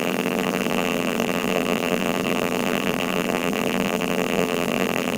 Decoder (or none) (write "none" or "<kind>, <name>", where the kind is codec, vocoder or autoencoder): vocoder, BigVGAN v2